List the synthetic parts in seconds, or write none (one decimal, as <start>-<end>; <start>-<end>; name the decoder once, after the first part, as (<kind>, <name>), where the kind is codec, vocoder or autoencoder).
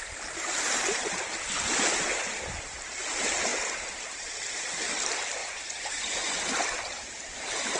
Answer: 5.4-6.4 (vocoder, Vocos)